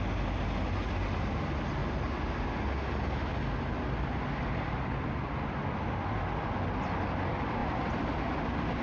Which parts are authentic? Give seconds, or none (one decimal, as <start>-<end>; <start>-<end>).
0.0-8.8